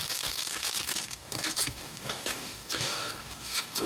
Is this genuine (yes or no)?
no